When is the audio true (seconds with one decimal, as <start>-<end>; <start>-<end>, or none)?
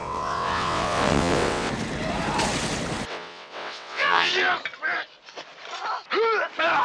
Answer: 1.7-3.1; 4.3-6.8